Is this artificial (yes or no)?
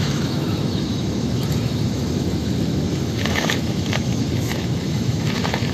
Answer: yes